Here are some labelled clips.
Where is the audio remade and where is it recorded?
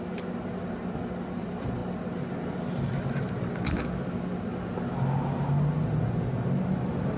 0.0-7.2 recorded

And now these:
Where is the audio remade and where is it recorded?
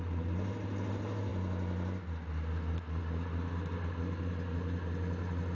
0.0-5.5 recorded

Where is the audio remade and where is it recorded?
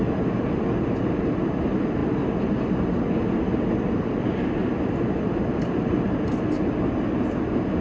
0.0-7.8 recorded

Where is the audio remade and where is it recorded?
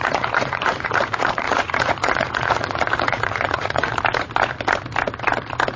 0.0-3.9 remade; 3.9-5.8 recorded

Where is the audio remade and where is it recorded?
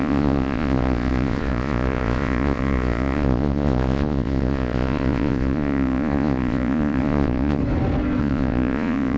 0.0-7.6 remade; 7.6-8.2 recorded; 8.2-9.2 remade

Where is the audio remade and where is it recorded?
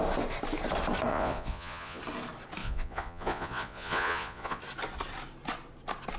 0.0-1.1 recorded; 1.1-2.0 remade; 2.0-2.6 recorded; 2.6-4.6 remade; 4.6-6.2 recorded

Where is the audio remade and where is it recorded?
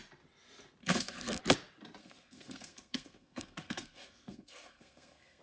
0.0-0.8 recorded; 0.8-1.4 remade; 1.4-2.0 recorded; 2.0-5.4 remade